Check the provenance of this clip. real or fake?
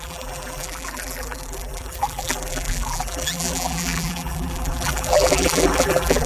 fake